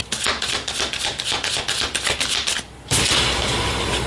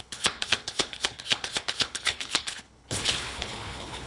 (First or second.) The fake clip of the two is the second